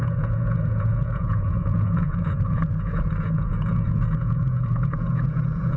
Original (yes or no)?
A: no